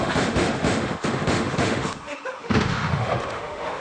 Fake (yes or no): yes